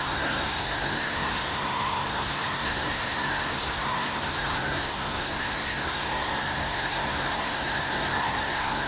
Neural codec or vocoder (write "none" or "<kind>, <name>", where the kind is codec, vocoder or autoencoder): codec, SNAC